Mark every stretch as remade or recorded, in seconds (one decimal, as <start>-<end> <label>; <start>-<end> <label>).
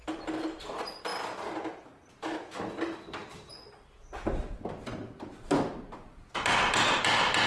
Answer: 0.0-7.5 recorded